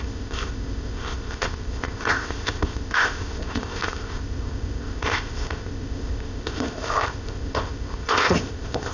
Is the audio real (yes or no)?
no